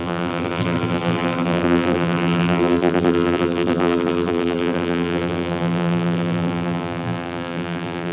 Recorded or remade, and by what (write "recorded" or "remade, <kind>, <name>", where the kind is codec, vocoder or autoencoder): remade, vocoder, BigVGAN v2